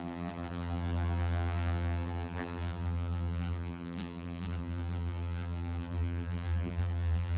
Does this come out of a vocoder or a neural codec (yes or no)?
yes